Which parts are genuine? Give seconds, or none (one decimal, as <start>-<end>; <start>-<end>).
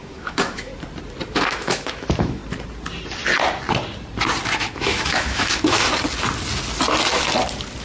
0.7-1.3; 2.4-4.6; 5.9-7.8